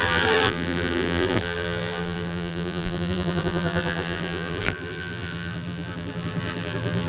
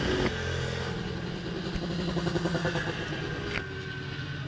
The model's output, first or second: first